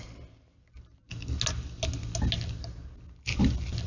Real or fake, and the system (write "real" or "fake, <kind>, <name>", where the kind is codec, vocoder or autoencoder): real